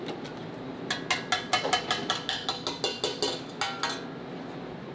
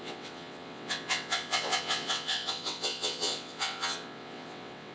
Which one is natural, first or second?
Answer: first